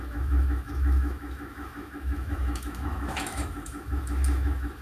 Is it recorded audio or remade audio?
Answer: remade